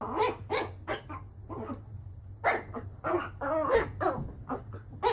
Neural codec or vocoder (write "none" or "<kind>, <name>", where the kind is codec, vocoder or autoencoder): none